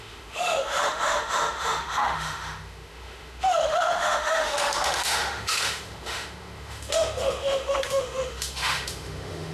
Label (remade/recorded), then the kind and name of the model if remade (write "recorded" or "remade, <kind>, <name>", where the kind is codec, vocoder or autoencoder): remade, autoencoder, DAC-VAE